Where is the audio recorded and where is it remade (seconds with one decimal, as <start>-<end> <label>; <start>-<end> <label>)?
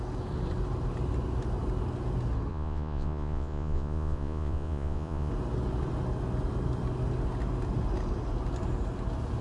0.0-2.5 recorded; 2.5-5.3 remade; 5.3-9.4 recorded